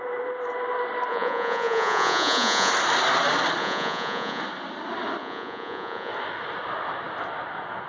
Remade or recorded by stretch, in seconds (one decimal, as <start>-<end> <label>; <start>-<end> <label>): 0.0-1.1 recorded; 1.1-2.7 remade; 2.7-3.6 recorded; 3.6-4.4 remade; 4.4-5.2 recorded; 5.2-6.1 remade; 6.1-7.9 recorded